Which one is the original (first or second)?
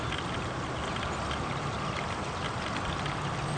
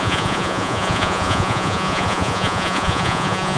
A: first